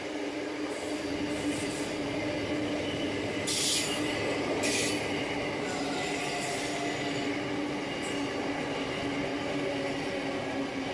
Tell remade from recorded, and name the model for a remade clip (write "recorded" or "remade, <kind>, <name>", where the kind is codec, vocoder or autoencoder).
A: recorded